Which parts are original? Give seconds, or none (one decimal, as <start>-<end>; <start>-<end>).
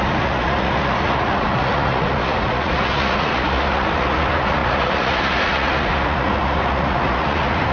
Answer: none